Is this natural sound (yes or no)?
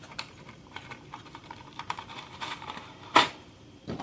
no